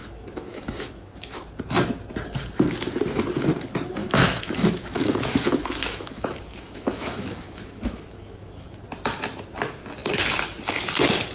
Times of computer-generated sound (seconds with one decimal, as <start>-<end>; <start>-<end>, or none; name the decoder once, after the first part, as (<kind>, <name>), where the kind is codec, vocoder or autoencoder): 0.0-1.4 (autoencoder, DAC-VAE); 4.0-8.8